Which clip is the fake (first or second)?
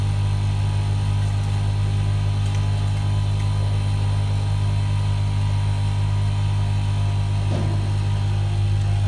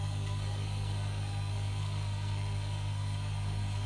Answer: second